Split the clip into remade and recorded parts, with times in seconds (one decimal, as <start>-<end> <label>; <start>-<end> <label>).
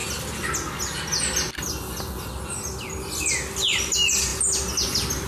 0.0-5.3 recorded